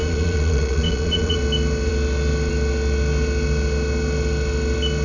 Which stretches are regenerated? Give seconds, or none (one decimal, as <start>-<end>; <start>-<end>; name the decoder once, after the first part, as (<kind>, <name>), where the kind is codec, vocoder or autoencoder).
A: 0.0-1.4 (vocoder, Vocos)